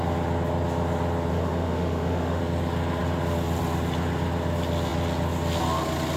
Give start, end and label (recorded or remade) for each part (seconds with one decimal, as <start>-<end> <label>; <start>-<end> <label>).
0.0-1.3 recorded; 1.3-2.4 remade; 2.4-6.2 recorded